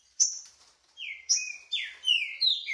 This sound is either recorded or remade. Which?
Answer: remade